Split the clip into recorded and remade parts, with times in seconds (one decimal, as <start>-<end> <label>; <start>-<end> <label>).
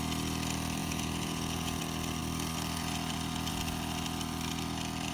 0.0-0.8 recorded; 0.8-1.8 remade; 1.8-5.1 recorded